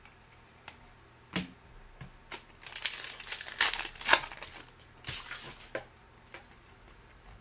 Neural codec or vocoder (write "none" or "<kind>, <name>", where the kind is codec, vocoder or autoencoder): none